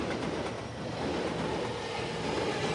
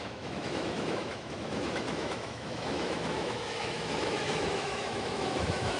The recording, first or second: first